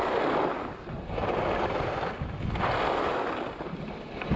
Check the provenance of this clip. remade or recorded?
recorded